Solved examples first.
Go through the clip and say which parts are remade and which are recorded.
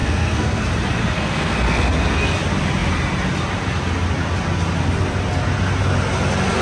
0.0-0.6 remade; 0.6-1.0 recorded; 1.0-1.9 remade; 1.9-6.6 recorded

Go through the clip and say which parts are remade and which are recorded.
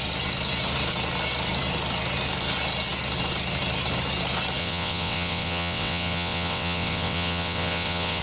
0.0-4.6 recorded; 4.6-8.2 remade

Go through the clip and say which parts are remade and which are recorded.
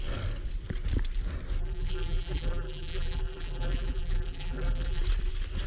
0.0-1.6 recorded; 1.6-5.0 remade; 5.0-5.7 recorded